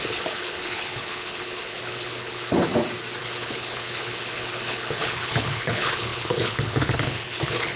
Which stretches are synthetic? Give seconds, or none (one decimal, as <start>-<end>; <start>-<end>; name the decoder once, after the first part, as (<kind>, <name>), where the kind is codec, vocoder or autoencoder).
0.0-2.7 (codec, HILCodec); 3.2-7.8

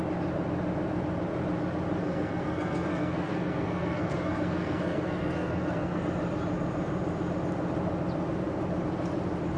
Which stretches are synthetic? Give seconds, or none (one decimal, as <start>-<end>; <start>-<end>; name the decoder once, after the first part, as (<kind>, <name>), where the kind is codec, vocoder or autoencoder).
2.0-6.0 (codec, SNAC)

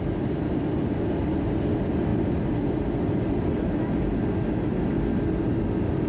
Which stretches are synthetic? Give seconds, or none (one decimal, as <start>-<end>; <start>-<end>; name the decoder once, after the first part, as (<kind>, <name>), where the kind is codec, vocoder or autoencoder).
none

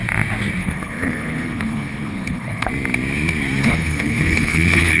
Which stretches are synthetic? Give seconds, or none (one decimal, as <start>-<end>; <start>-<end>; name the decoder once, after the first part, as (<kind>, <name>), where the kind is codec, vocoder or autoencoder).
0.6-2.7 (codec, HILCodec); 3.6-5.0

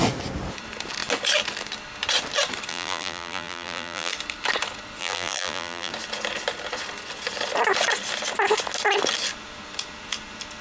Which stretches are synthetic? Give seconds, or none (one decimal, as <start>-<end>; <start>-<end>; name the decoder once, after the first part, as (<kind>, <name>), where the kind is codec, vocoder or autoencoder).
2.7-4.1 (vocoder, BigVGAN v2); 5.0-5.9